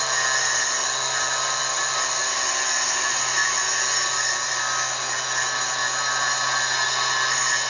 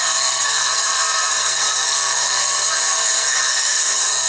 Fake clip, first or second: second